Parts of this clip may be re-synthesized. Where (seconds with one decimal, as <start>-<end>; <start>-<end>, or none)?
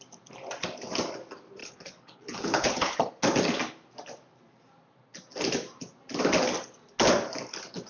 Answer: 1.6-3.1